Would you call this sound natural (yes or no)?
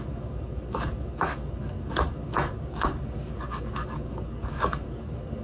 no